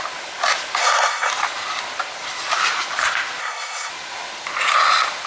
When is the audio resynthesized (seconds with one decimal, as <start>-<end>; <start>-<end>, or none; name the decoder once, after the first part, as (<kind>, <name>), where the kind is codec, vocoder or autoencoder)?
0.8-1.3 (codec, SNAC); 3.4-3.9